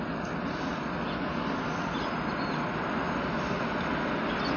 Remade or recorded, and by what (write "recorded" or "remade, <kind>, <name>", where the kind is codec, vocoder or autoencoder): recorded